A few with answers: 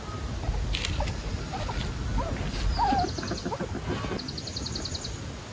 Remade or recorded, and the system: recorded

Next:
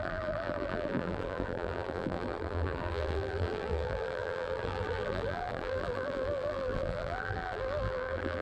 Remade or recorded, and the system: remade, vocoder, BigVGAN v2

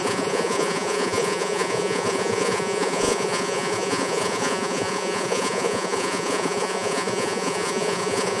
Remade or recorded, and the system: remade, vocoder, Vocos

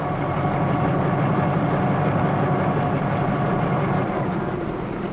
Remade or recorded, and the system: recorded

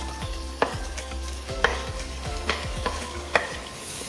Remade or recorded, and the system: remade, codec, DAC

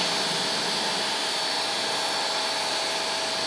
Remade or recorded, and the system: recorded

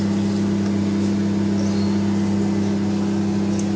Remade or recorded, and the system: recorded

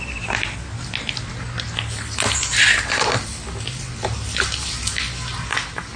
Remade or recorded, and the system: recorded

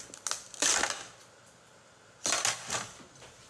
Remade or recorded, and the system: recorded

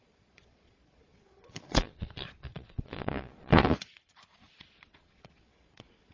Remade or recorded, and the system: remade, vocoder, Vocos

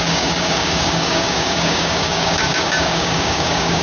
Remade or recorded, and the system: remade, codec, DAC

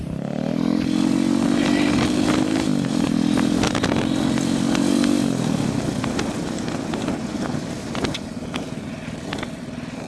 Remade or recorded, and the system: recorded